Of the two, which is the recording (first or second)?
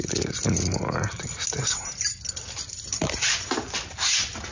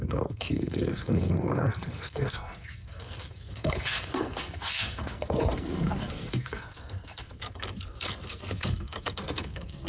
first